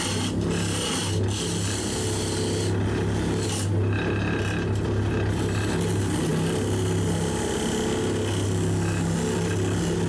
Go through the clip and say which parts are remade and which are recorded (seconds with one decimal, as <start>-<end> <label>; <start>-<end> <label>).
0.0-10.1 recorded